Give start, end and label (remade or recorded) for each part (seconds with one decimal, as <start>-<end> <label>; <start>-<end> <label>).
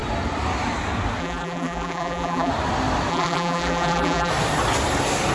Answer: 0.0-1.2 recorded; 1.2-2.5 remade; 2.5-3.1 recorded; 3.1-4.3 remade; 4.3-5.3 recorded